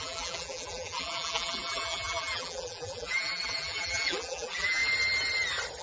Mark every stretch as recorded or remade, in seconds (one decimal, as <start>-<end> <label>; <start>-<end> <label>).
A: 0.0-4.8 remade; 4.8-5.8 recorded